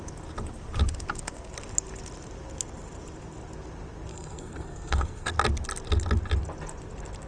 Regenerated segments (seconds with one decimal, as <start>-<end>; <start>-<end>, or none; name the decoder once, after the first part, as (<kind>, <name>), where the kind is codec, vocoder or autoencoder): 4.1-5.3 (codec, SNAC)